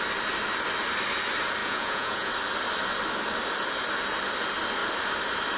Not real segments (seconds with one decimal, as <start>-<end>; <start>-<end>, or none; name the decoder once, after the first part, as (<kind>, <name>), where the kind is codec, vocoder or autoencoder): 1.6-2.3 (vocoder, Vocos)